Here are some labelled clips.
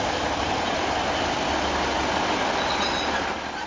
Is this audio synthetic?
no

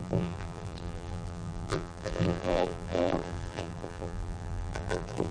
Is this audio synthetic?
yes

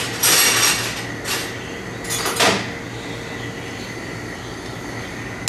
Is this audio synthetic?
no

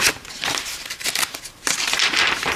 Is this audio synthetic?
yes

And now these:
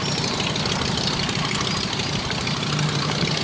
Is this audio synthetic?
no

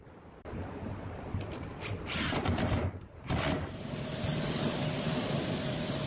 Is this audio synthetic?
no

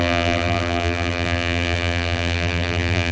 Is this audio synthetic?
yes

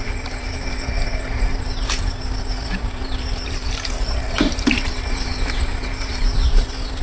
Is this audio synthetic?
yes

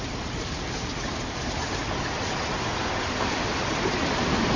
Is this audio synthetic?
no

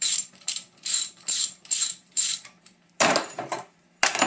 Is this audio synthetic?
yes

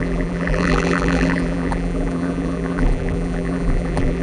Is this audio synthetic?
yes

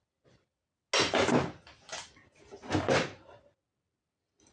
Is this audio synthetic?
no